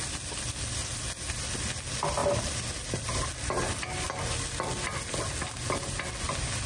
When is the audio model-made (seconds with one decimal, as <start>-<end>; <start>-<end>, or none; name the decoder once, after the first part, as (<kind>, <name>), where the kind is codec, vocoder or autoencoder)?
none